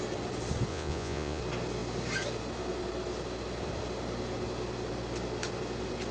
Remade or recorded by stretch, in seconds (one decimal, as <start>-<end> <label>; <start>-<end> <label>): 0.0-0.7 recorded; 0.7-1.4 remade; 1.4-6.1 recorded